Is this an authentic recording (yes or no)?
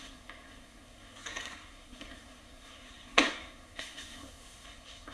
no